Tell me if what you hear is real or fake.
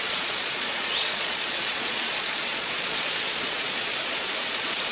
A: fake